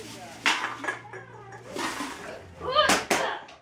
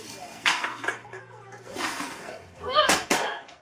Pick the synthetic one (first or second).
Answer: second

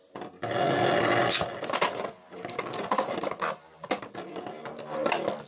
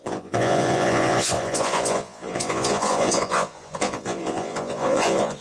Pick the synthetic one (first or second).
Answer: second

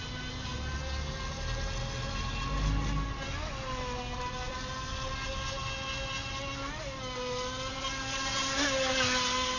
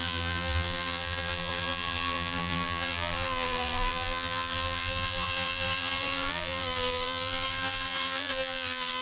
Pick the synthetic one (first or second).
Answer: second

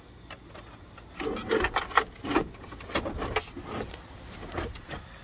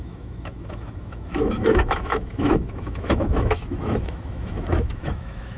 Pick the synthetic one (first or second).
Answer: second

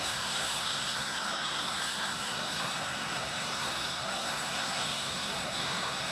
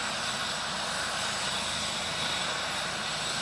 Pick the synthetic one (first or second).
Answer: first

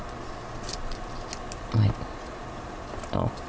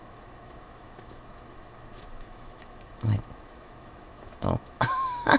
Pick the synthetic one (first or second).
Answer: second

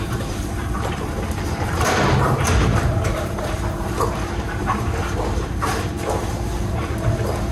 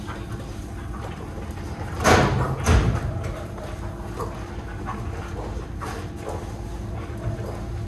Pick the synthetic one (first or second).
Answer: first